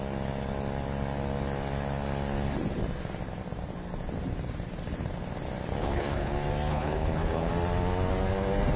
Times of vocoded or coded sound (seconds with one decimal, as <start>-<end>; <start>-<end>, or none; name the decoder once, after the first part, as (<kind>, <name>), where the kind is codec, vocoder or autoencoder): 5.8-6.3 (codec, HILCodec); 6.7-7.5

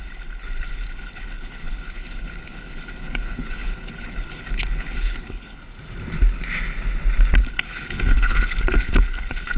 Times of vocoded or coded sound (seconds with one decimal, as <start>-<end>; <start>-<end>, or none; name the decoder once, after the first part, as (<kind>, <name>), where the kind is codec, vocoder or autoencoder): 0.0-5.6 (codec, HILCodec); 7.4-9.6

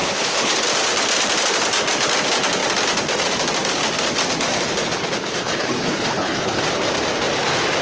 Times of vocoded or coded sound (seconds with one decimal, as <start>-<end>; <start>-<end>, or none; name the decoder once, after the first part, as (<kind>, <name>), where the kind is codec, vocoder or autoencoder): 0.0-0.5 (codec, HILCodec); 5.4-6.6

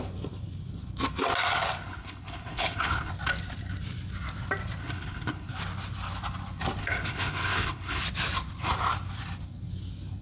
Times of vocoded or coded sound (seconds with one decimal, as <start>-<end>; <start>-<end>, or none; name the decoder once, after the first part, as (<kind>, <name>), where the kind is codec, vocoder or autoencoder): 1.8-3.1 (codec, HILCodec); 4.8-5.5; 6.8-8.0

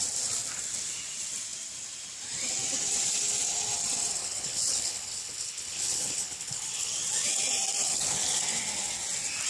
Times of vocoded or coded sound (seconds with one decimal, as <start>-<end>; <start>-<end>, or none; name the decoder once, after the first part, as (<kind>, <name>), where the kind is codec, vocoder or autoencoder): 4.2-6.9 (codec, HILCodec); 7.8-8.4

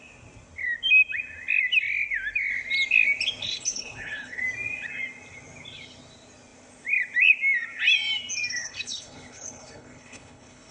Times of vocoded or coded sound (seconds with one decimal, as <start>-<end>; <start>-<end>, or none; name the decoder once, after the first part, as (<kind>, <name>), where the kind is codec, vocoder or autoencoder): 3.4-4.4 (codec, HILCodec); 8.6-10.7

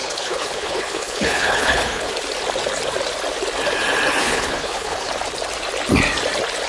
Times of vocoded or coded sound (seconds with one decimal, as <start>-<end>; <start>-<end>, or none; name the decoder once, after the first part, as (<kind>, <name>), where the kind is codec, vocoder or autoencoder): 0.0-2.1 (codec, HILCodec); 4.2-5.1

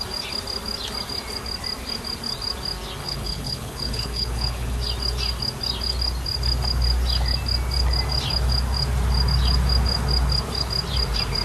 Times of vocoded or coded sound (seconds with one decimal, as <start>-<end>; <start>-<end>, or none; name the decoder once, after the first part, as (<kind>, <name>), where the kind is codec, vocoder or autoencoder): 3.0-4.8 (codec, HILCodec)